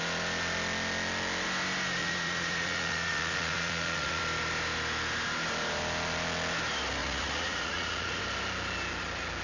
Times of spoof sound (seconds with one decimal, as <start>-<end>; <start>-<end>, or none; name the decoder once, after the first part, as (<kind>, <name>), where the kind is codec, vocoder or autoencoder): 2.0-4.2 (vocoder, Vocos); 7.0-8.2